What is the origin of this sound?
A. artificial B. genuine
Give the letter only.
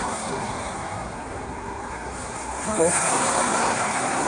A